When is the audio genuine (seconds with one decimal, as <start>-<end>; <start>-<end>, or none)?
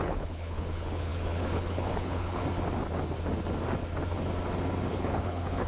2.4-4.9